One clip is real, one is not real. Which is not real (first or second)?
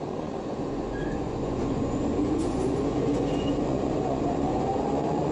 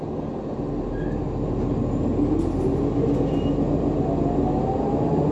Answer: first